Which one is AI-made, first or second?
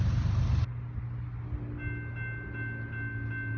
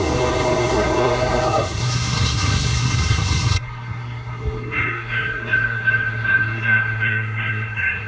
second